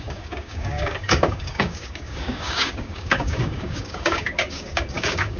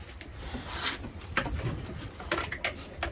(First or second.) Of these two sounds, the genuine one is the second